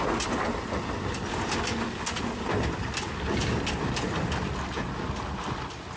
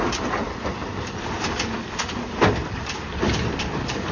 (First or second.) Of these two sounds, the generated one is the second